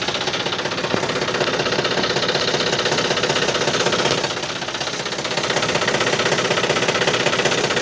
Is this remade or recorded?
recorded